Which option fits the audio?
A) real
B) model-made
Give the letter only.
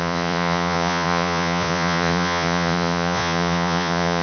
B